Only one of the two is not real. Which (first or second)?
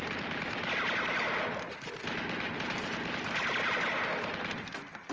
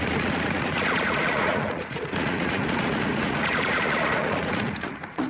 second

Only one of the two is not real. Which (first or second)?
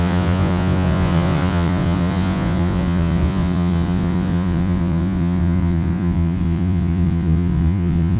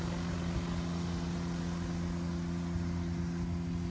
first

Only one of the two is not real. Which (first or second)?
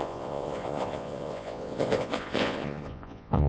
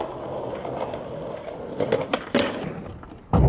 first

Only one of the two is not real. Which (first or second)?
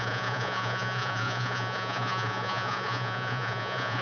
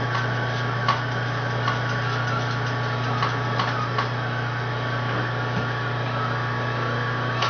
first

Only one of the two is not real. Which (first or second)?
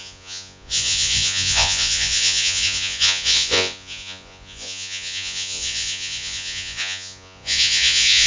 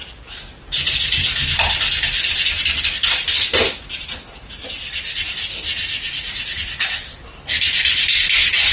first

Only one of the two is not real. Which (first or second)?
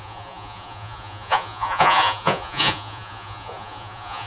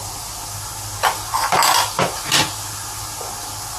first